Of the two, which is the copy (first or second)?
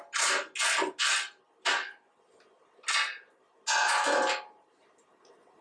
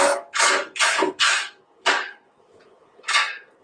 second